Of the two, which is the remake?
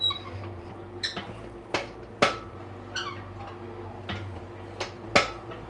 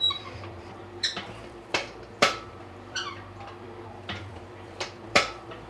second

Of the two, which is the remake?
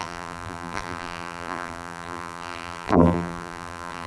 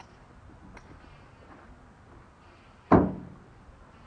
first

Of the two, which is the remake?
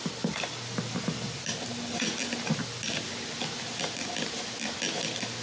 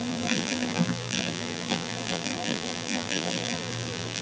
second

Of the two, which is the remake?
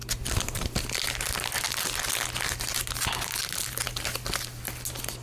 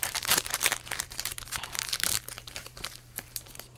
second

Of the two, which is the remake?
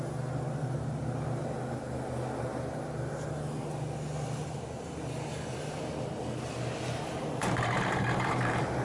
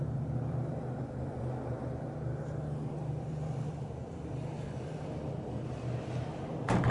second